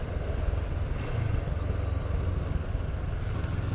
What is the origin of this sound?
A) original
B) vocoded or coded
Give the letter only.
A